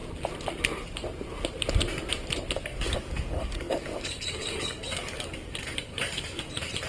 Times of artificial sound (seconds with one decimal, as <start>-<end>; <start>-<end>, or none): 2.7-6.5